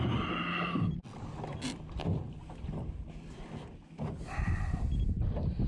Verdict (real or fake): real